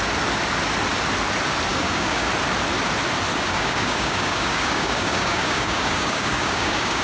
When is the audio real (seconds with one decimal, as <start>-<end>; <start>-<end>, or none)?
0.0-1.7; 2.3-3.3